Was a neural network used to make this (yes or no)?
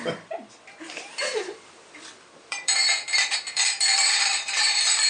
yes